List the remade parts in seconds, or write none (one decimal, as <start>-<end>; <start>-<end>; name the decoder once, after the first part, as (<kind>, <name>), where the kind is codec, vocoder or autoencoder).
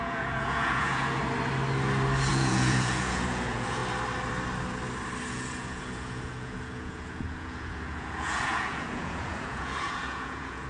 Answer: 0.0-1.2 (vocoder, Vocos); 2.3-3.8; 5.3-10.7